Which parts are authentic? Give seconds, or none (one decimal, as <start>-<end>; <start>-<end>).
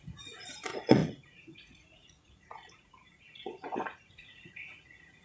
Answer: none